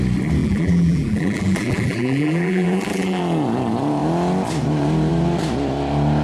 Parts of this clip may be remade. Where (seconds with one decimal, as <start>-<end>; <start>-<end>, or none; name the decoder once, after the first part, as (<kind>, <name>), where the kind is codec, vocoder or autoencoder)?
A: 0.4-3.2 (vocoder, BigVGAN v2)